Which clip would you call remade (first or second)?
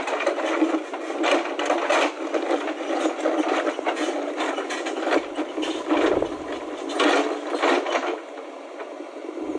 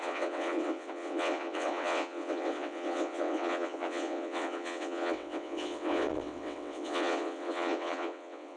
second